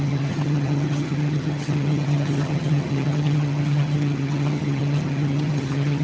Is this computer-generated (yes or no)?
yes